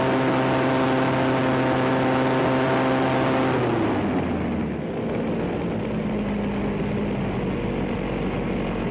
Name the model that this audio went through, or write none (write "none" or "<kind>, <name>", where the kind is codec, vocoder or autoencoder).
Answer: none